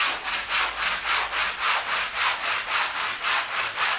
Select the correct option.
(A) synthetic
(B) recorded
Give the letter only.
B